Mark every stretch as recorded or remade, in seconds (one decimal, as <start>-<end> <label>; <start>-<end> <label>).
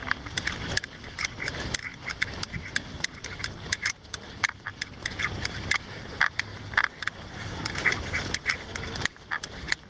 0.0-6.5 remade; 6.5-7.2 recorded; 7.2-9.9 remade